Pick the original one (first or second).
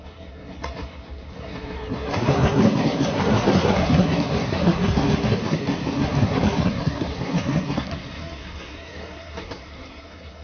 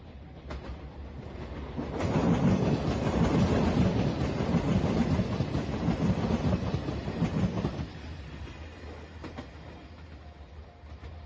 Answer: second